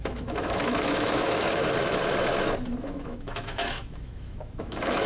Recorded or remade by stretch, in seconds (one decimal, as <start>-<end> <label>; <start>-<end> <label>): 0.0-1.6 remade; 1.6-2.8 recorded; 2.8-5.1 remade